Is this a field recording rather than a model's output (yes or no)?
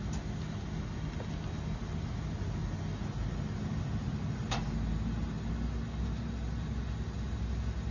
yes